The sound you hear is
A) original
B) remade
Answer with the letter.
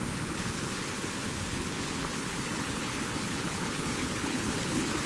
B